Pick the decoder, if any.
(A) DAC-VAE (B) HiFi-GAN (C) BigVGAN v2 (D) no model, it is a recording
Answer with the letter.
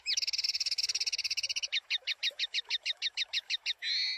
A